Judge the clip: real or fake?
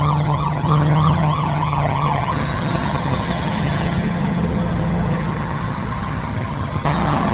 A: fake